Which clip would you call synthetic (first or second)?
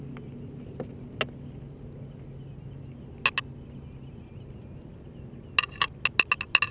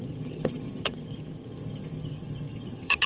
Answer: second